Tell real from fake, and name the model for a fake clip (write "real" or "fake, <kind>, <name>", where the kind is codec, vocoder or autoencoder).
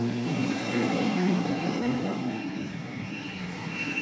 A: fake, codec, SNAC